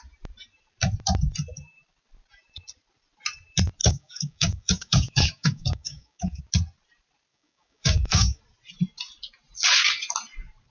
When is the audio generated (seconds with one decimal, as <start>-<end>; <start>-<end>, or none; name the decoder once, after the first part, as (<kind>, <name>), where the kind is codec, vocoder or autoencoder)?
3.8-6.4 (codec, DAC); 7.3-8.4